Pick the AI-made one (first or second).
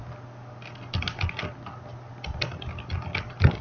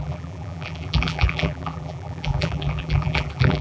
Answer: second